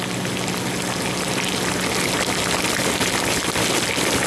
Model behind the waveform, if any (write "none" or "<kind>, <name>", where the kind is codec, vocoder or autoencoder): none